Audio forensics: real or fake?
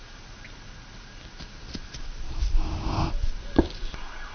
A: real